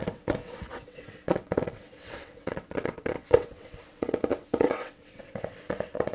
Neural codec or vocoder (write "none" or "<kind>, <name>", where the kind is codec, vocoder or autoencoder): vocoder, WaveNeXt